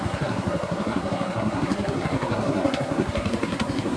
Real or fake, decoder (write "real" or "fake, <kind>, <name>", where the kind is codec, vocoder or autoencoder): fake, codec, SNAC